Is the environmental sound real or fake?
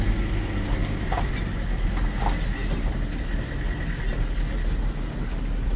real